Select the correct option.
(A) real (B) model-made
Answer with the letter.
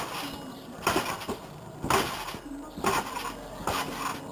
A